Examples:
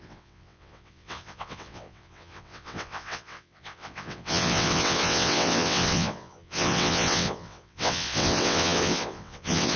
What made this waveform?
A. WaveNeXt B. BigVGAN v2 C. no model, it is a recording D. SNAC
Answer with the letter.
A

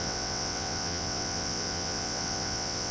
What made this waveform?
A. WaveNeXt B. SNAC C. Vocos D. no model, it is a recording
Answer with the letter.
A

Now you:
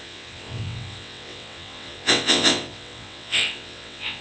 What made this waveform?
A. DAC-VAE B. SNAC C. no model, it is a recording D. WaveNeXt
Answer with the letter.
D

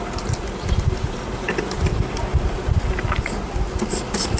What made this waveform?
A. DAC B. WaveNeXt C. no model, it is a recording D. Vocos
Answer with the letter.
C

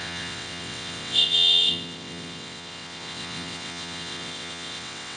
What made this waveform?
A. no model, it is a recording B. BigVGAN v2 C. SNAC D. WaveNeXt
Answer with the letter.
D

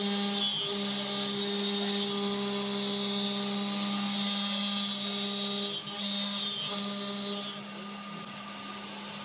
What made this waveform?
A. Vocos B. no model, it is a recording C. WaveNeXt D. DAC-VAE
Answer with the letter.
B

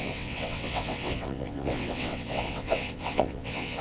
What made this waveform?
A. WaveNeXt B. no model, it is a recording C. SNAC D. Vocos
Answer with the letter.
A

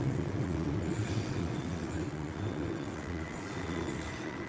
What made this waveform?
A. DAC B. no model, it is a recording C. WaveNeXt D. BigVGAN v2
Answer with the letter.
C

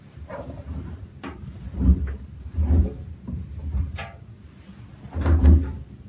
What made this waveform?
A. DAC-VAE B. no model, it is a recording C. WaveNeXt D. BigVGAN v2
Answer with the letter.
B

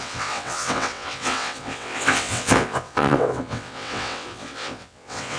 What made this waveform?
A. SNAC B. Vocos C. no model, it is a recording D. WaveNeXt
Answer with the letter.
D